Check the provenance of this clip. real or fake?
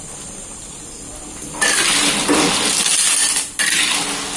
real